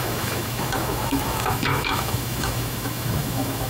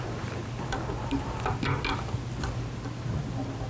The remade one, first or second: first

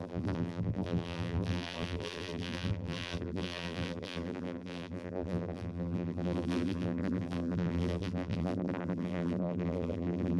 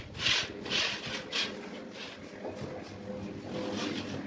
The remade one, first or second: first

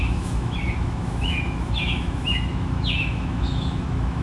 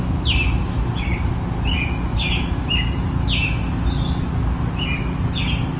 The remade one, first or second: first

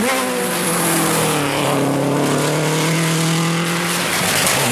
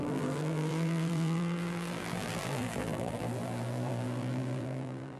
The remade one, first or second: second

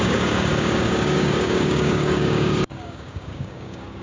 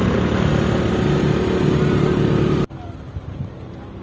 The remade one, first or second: first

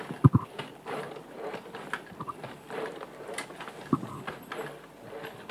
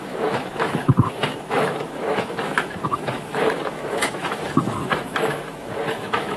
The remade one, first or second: second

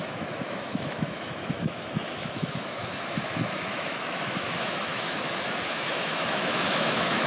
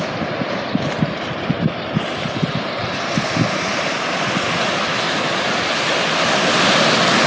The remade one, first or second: first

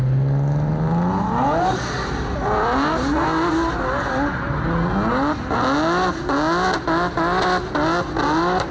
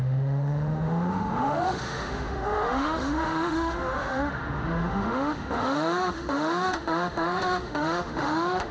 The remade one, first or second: second